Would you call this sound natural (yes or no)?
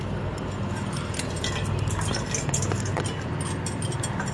yes